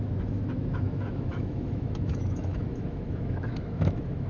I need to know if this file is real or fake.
fake